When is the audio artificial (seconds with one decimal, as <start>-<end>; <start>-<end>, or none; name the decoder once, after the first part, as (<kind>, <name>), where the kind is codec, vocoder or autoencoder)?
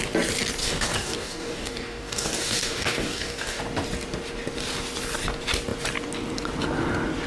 0.6-3.6 (codec, DAC)